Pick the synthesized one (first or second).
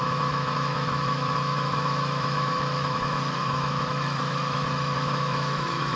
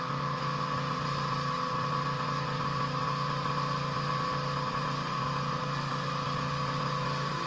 first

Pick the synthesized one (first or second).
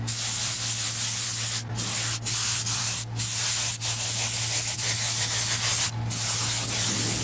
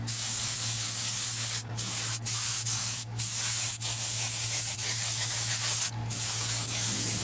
second